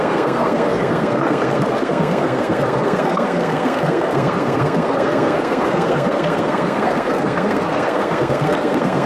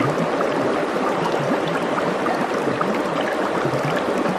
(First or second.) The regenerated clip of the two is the first